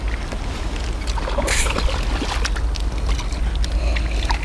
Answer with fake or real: real